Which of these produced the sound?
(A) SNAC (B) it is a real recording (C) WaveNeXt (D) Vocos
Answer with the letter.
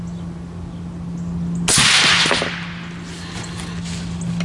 B